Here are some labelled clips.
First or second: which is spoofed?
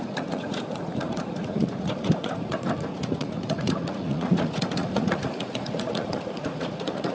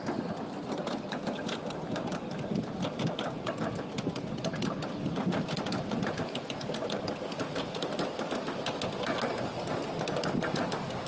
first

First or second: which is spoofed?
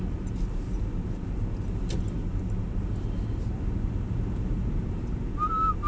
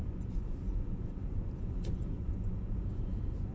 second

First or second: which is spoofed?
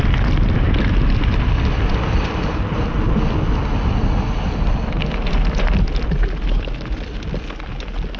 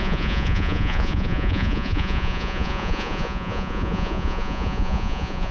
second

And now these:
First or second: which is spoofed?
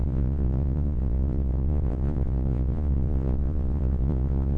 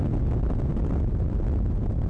first